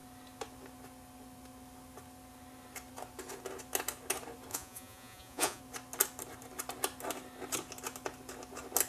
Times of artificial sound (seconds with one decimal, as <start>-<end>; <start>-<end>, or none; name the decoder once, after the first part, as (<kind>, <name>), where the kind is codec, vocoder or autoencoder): 4.5-5.6 (vocoder, Vocos)